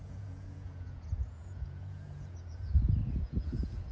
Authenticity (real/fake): fake